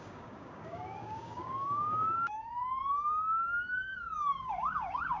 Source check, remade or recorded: remade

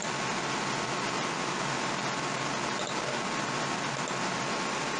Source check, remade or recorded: recorded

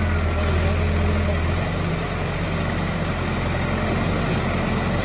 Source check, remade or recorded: recorded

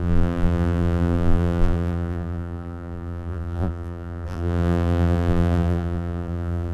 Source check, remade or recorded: remade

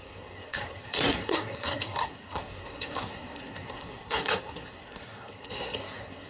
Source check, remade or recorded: remade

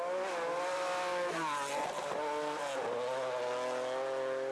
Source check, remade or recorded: recorded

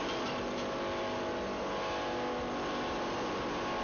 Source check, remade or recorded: recorded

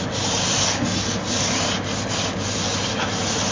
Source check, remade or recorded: recorded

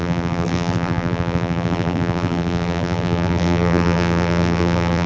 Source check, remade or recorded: remade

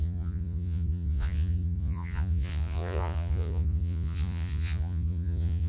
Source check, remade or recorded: remade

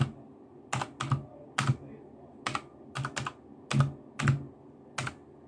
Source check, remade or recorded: recorded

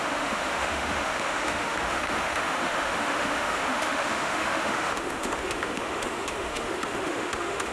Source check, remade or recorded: remade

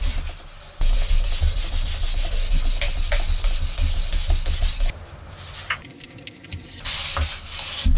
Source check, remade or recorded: recorded